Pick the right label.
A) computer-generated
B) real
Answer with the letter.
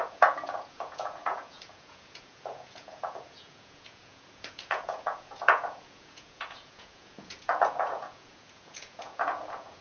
A